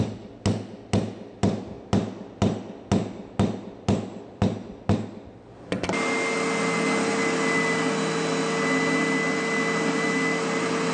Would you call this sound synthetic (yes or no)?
no